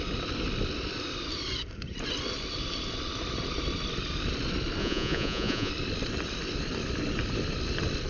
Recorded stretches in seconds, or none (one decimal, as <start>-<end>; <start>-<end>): 0.0-4.8; 5.7-8.1